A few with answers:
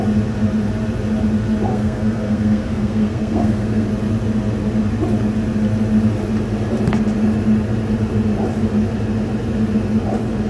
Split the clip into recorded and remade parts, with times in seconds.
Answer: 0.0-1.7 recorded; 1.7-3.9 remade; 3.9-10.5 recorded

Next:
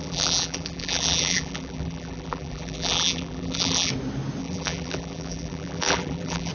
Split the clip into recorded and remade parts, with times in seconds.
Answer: 0.0-3.9 remade; 3.9-4.4 recorded; 4.4-6.5 remade

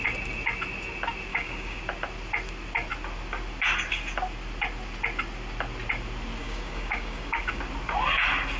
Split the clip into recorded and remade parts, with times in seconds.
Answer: 0.0-1.3 recorded; 1.3-1.8 remade; 1.8-6.4 recorded; 6.4-7.6 remade; 7.6-8.6 recorded

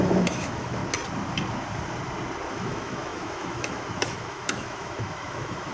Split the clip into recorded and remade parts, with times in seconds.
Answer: 0.0-0.8 remade; 0.8-2.5 recorded; 2.5-5.7 remade

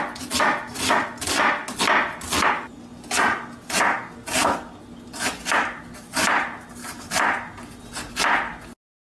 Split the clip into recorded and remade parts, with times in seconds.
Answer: 0.0-9.2 recorded